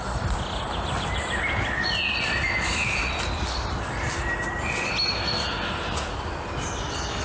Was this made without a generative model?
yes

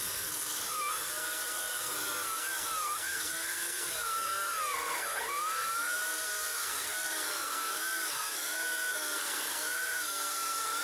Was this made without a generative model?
no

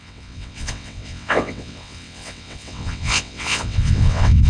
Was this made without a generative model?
no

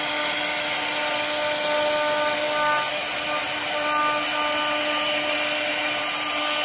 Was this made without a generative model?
yes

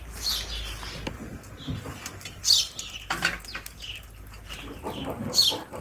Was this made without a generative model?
yes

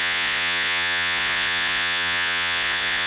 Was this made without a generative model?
no